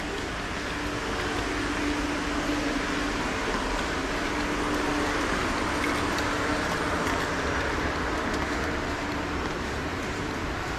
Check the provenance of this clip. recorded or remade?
recorded